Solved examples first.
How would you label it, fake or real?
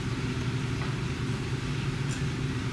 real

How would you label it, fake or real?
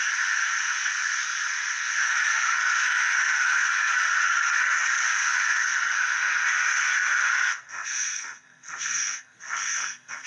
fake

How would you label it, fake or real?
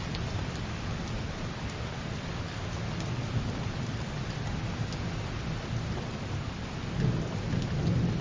real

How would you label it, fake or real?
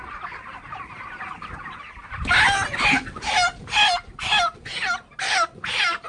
real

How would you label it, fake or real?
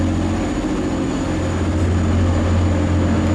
real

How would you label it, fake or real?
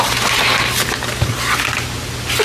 real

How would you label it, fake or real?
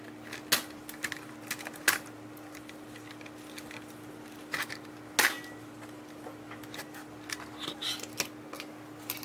real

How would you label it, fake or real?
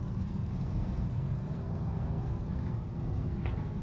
fake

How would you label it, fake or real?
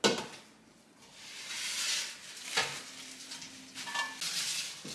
real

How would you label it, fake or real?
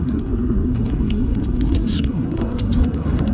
fake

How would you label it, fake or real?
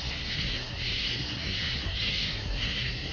fake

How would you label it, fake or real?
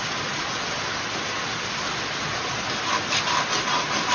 real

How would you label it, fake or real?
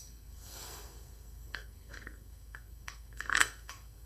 fake